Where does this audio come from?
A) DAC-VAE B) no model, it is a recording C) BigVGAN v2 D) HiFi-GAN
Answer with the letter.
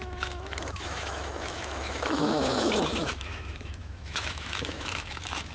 A